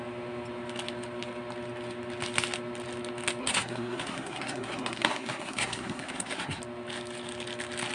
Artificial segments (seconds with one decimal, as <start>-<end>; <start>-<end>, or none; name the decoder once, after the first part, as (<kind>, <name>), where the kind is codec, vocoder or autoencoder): 3.4-6.6 (codec, SNAC)